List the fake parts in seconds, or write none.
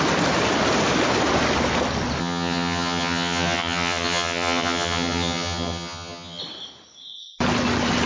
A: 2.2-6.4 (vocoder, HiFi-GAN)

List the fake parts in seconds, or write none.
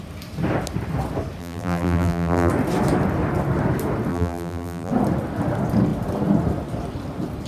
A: 1.4-2.5 (vocoder, BigVGAN v2); 4.1-4.9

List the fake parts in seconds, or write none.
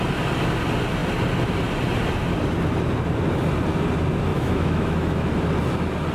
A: 4.3-5.3 (autoencoder, DAC-VAE)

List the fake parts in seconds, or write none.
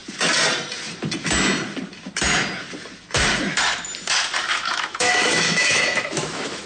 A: 4.4-6.7 (autoencoder, DAC-VAE)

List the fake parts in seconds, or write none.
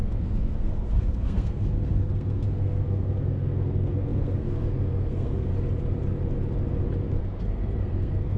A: 0.0-5.5 (codec, SNAC); 7.2-8.4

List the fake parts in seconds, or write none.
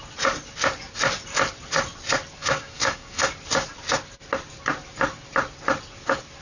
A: 2.4-3.3 (codec, DAC)